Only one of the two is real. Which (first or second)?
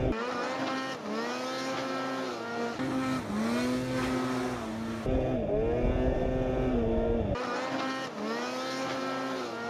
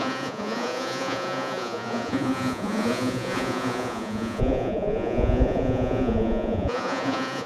first